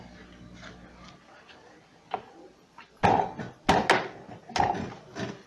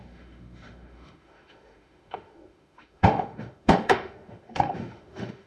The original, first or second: first